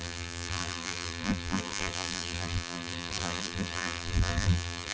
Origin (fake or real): fake